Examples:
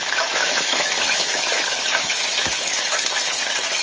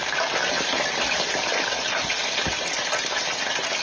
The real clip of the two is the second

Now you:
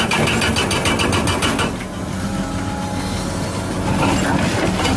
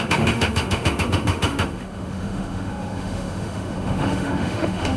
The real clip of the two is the first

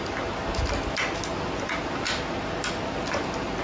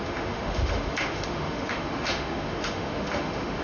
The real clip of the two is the first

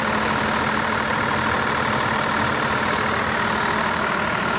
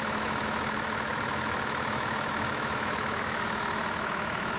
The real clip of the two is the first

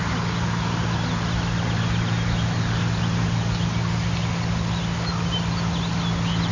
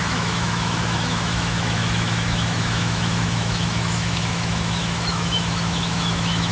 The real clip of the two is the first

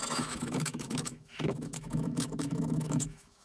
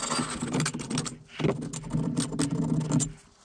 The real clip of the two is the second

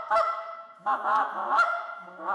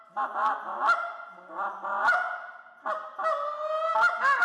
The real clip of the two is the second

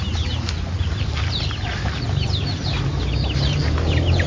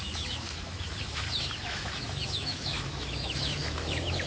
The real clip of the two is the first